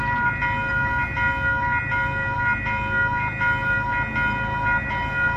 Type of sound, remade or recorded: recorded